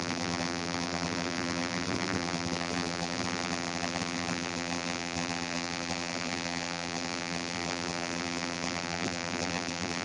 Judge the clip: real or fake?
fake